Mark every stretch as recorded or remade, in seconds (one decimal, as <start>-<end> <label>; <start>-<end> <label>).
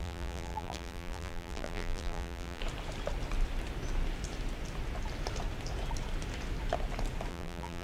0.0-2.6 remade; 2.6-7.3 recorded; 7.3-7.8 remade